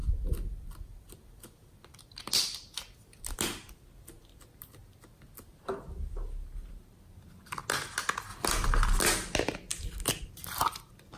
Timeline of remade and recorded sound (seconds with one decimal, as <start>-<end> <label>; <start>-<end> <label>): 0.0-2.2 remade; 2.2-8.3 recorded; 8.3-9.0 remade; 9.0-11.2 recorded